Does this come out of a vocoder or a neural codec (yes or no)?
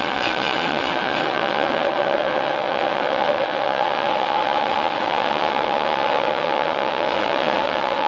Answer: yes